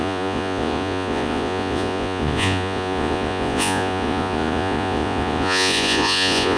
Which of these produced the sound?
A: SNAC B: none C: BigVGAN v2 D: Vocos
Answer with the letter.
D